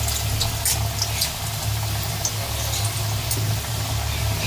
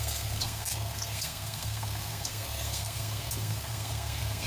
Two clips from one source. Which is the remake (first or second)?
second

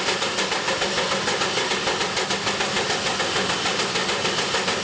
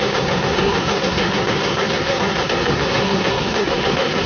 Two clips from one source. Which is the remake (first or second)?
second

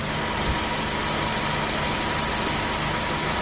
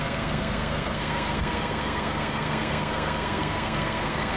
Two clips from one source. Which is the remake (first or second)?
second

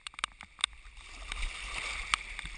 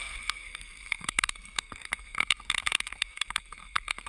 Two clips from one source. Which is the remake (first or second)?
second